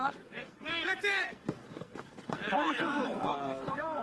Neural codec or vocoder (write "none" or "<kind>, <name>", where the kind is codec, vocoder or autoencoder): codec, SNAC